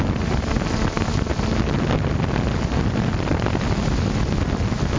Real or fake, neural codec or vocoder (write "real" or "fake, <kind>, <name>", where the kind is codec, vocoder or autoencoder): real